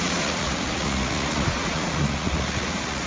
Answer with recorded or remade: remade